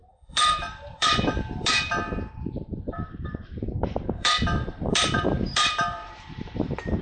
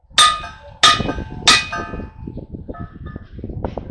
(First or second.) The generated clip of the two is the first